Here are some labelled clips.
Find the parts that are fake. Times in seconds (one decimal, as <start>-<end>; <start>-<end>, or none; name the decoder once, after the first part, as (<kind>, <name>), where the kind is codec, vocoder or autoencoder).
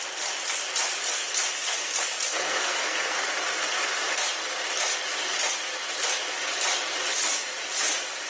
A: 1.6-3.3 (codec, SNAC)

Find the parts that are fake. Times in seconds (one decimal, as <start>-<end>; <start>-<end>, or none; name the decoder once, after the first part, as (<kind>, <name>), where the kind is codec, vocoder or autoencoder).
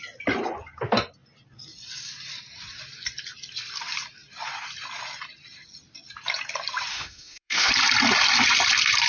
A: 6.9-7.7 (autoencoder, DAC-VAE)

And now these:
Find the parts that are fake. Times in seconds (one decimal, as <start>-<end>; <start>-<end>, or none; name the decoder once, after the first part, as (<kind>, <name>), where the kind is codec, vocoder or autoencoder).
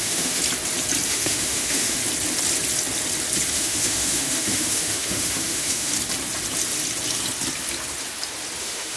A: 0.0-0.4 (autoencoder, DAC-VAE); 1.1-2.0; 3.5-5.9; 8.6-9.0